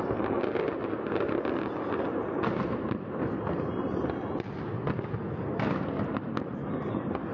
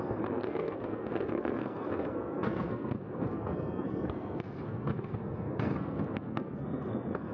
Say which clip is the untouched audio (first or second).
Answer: first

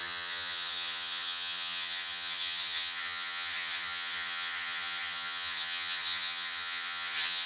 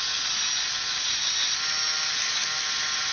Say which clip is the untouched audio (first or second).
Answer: second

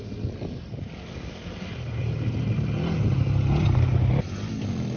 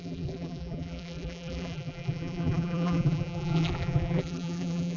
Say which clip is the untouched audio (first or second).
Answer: first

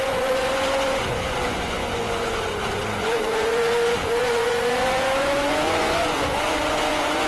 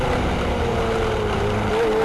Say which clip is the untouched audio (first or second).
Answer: second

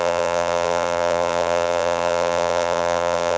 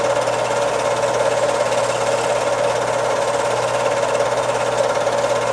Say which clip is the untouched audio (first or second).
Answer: second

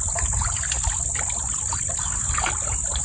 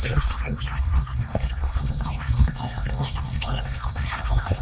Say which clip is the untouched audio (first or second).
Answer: first